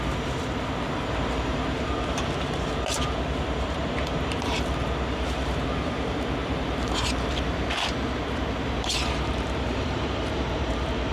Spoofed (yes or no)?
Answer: yes